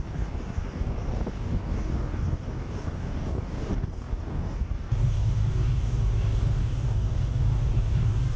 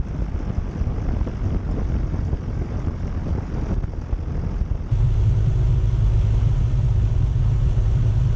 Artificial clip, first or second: first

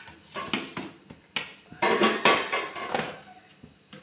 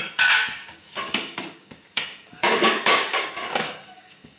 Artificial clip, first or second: second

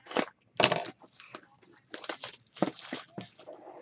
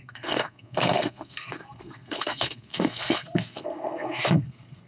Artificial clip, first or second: second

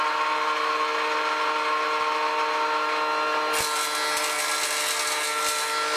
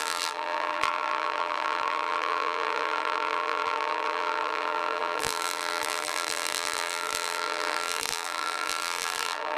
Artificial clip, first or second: second